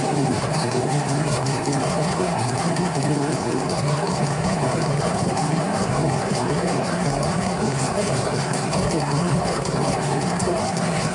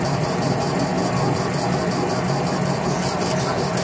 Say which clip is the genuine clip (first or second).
second